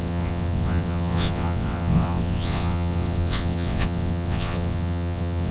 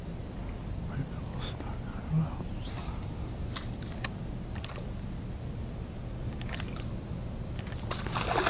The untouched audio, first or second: second